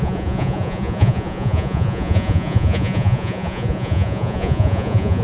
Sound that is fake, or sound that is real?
fake